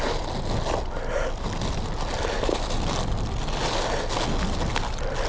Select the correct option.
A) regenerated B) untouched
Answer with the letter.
B